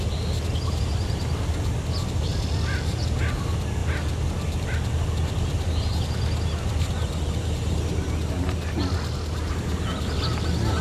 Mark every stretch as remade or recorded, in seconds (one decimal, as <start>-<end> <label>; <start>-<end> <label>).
0.0-10.8 recorded